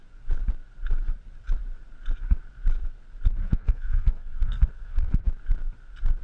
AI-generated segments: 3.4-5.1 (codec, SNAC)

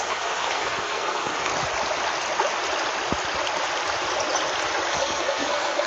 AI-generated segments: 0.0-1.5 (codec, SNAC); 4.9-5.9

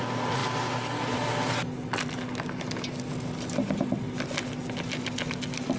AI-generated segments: none

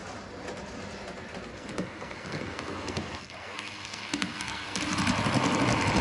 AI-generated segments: 1.5-4.8 (codec, SNAC)

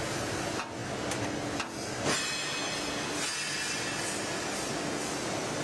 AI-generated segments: none

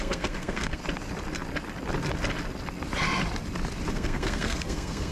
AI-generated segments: 0.0-0.8 (codec, SNAC); 3.9-5.1